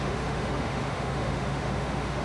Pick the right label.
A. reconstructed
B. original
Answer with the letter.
A